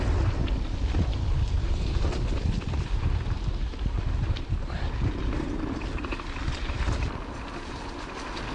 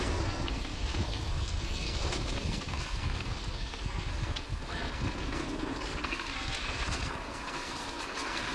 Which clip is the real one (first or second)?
first